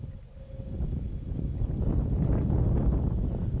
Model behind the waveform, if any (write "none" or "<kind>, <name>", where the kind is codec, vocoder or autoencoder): none